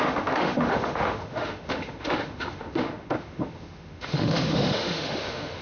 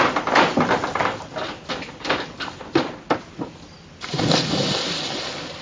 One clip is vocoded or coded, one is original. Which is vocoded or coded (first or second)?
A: first